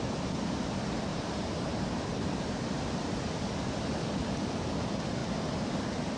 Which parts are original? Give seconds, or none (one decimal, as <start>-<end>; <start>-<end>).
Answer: 0.0-1.1; 3.5-6.2